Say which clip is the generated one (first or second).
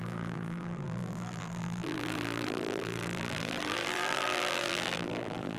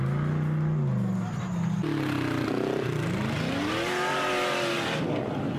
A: first